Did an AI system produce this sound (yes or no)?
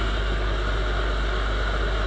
no